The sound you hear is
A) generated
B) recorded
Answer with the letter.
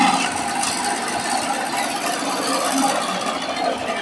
B